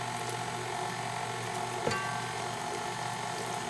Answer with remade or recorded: recorded